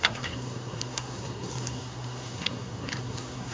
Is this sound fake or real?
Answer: fake